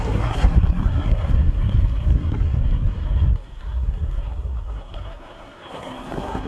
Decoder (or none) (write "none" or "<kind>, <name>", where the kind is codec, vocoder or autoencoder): codec, SNAC